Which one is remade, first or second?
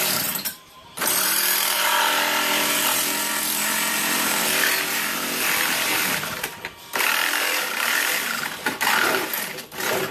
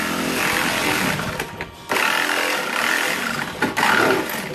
first